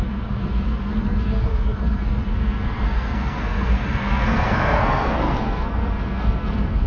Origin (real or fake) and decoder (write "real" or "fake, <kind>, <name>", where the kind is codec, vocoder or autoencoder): fake, codec, SNAC